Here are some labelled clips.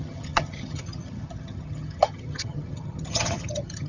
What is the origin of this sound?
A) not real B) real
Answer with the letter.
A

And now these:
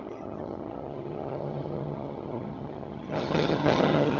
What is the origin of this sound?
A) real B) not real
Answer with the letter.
B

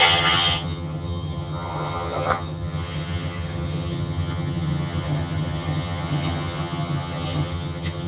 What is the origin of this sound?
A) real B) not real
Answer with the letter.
B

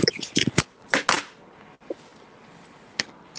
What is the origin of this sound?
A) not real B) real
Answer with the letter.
B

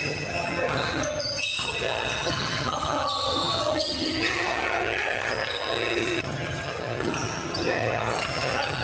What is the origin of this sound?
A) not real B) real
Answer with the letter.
A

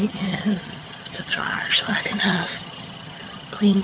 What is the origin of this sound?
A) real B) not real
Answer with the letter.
B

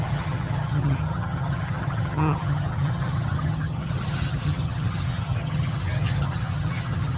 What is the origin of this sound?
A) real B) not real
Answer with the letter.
B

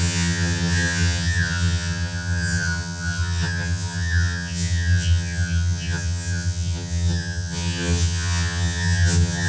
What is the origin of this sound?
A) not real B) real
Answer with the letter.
A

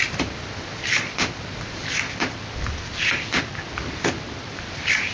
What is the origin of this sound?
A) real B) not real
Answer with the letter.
A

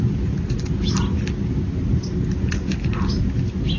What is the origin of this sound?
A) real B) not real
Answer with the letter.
A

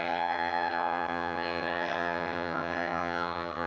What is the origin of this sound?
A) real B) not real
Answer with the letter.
B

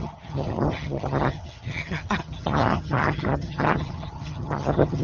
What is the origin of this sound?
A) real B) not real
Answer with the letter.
B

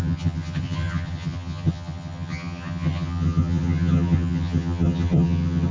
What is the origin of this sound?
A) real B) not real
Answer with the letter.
B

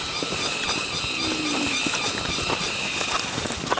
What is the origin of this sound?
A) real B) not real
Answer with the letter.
A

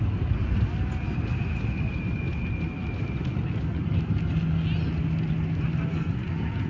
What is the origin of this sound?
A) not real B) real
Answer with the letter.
B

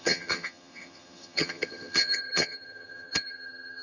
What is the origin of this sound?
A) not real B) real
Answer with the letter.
A